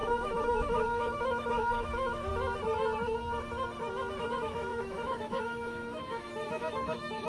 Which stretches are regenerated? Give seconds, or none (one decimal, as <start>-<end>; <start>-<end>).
0.0-2.3; 4.2-7.3